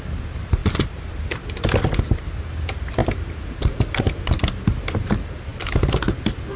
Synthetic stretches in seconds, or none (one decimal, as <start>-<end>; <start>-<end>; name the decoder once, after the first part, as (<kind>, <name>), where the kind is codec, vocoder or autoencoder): none